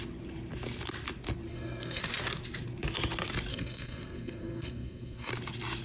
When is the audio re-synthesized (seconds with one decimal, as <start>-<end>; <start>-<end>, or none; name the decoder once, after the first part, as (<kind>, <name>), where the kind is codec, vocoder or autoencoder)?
1.5-2.0 (codec, SNAC); 3.5-5.3